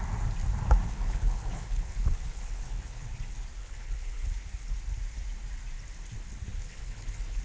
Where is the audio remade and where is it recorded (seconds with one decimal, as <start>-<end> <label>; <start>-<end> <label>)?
0.0-0.9 recorded; 0.9-3.1 remade; 3.1-3.6 recorded; 3.6-4.3 remade; 4.3-6.5 recorded; 6.5-7.4 remade